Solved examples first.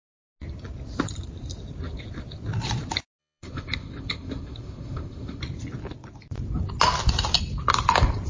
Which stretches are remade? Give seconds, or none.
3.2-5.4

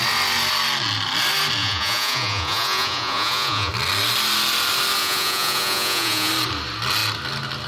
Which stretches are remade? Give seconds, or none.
1.6-3.7; 5.0-6.3

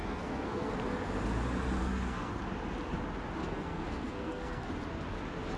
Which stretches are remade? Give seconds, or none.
0.0-0.7; 1.8-2.3; 3.4-4.7

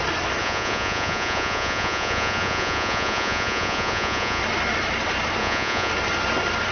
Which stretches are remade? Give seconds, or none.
0.4-4.4; 5.4-5.9

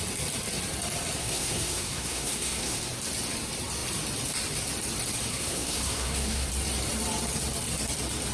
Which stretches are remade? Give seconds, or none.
1.2-2.8; 5.3-6.5

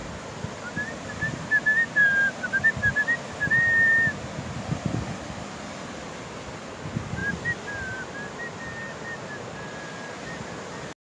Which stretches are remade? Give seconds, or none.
none

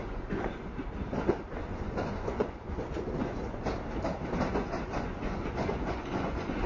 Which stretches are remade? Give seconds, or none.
0.0-0.7; 1.5-3.7; 4.5-6.7